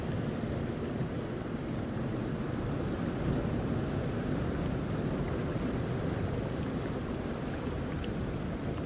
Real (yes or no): yes